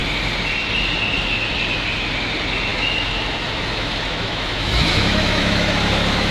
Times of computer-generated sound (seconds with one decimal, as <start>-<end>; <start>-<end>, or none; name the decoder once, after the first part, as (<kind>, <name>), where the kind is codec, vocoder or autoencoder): 2.7-6.3 (autoencoder, DAC-VAE)